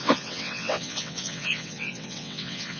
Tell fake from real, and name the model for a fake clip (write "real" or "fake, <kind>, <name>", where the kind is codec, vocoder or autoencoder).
fake, vocoder, WaveNeXt